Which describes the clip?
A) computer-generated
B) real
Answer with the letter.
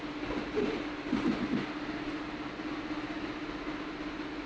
B